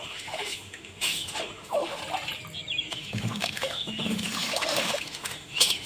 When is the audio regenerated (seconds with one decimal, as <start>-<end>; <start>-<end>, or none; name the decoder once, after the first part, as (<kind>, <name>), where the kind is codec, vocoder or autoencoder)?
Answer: 0.0-2.0 (autoencoder, DAC-VAE); 2.9-5.9